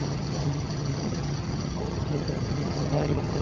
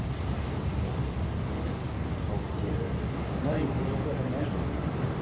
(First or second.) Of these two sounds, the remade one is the first